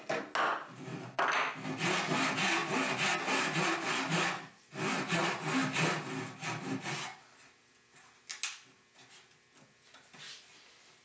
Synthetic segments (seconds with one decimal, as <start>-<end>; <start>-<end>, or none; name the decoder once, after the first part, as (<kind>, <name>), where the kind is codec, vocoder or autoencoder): none